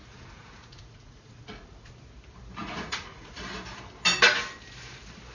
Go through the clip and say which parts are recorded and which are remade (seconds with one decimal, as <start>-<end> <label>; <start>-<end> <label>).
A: 0.0-1.9 remade; 1.9-2.6 recorded; 2.6-3.4 remade; 3.4-5.3 recorded